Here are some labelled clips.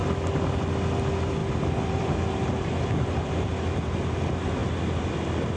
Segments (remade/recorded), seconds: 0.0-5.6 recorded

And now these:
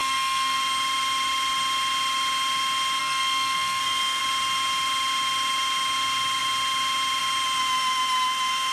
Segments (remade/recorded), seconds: 0.0-0.6 remade; 0.6-3.0 recorded; 3.0-4.2 remade; 4.2-8.7 recorded

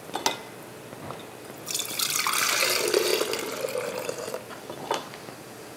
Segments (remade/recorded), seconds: 0.0-5.8 recorded

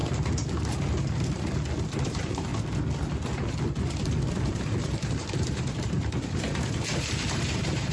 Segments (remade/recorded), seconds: 0.0-1.9 recorded; 1.9-2.5 remade; 2.5-4.4 recorded; 4.4-7.9 remade